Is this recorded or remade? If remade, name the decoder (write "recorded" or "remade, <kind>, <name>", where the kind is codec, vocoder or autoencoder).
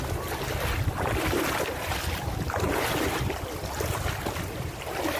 recorded